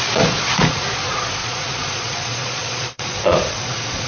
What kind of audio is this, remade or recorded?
remade